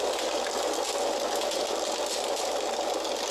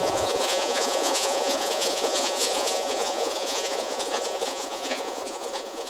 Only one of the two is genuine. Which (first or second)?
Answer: first